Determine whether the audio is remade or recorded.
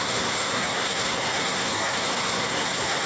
remade